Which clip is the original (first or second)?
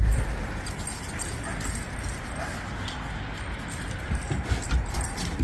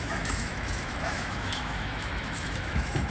first